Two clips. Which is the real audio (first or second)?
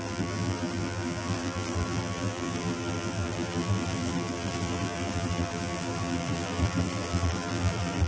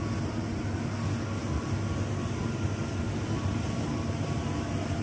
second